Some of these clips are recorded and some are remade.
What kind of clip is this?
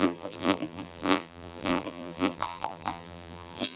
remade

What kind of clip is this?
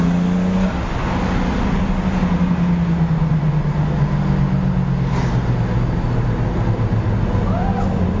recorded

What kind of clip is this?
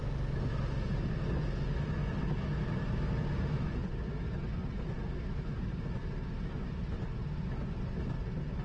recorded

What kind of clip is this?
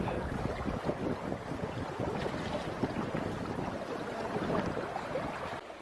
recorded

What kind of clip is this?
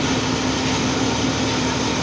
recorded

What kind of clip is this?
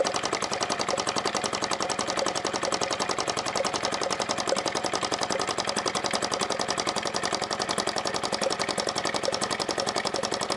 recorded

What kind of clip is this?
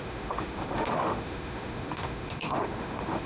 remade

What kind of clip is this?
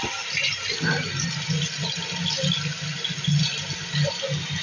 recorded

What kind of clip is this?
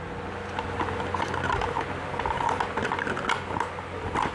recorded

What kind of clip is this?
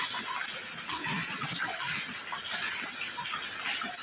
recorded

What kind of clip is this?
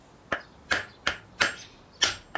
recorded